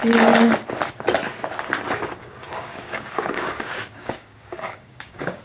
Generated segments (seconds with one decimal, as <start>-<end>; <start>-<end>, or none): 1.9-5.4